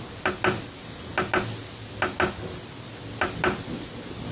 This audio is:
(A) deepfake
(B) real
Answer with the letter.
B